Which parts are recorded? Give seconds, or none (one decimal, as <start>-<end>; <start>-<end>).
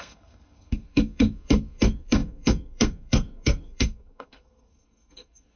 none